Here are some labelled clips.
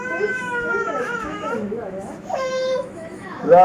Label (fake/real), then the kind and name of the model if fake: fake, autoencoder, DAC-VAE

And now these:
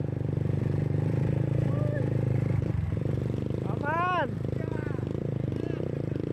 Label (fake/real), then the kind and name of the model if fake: real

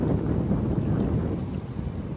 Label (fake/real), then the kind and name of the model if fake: real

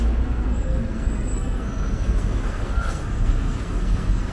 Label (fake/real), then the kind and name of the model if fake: fake, codec, SNAC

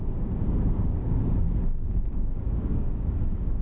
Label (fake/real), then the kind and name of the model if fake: fake, codec, DAC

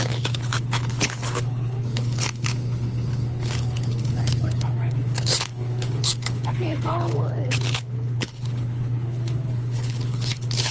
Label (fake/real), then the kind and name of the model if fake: fake, codec, HILCodec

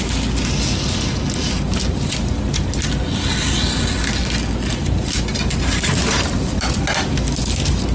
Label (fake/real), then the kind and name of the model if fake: real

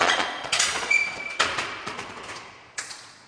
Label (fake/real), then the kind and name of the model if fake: fake, vocoder, Vocos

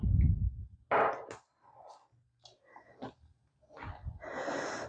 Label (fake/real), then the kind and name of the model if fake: real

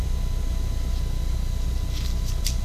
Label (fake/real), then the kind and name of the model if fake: real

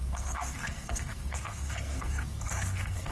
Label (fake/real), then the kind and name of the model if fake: fake, codec, SNAC